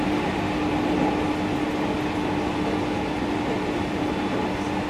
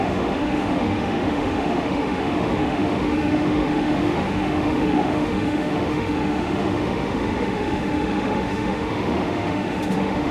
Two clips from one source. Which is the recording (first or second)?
first